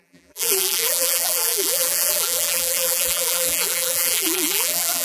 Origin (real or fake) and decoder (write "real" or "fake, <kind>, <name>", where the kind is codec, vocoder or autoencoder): fake, vocoder, BigVGAN v2